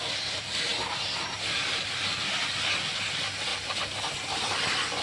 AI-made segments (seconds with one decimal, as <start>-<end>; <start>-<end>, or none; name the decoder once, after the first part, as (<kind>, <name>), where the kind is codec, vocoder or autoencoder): 0.0-5.0 (vocoder, BigVGAN v2)